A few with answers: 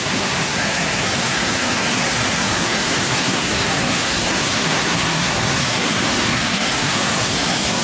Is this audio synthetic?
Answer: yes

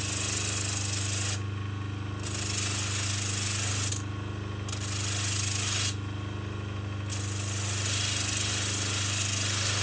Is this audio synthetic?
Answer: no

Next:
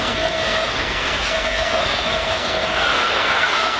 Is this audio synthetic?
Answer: yes